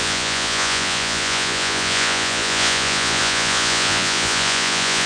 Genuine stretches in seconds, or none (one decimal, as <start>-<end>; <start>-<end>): none